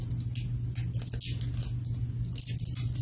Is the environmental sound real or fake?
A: real